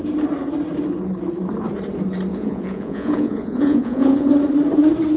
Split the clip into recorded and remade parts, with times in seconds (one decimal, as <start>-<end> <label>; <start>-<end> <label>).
0.0-2.3 recorded; 2.3-4.3 remade; 4.3-5.2 recorded